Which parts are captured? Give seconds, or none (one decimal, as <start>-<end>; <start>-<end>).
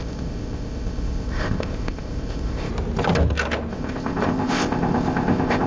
2.7-3.7